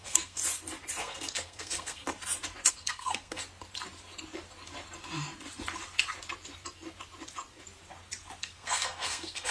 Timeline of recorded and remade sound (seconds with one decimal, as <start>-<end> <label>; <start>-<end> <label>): 0.0-0.4 remade; 0.4-1.0 recorded; 1.0-2.0 remade; 2.0-2.7 recorded; 2.7-3.4 remade; 3.4-8.4 recorded; 8.4-9.5 remade